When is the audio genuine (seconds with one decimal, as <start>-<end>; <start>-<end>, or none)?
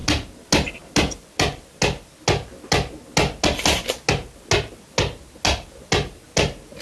0.0-6.8